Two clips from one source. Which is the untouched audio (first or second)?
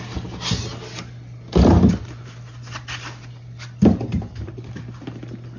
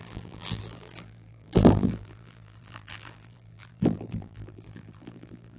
first